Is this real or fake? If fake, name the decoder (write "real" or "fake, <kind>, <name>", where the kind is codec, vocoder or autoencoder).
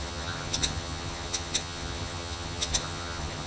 fake, vocoder, HiFi-GAN